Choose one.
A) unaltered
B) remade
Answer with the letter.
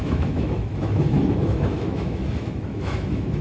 B